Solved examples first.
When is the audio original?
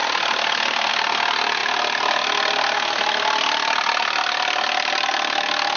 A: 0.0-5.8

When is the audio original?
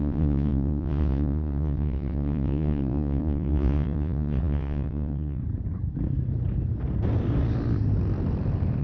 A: 5.4-8.8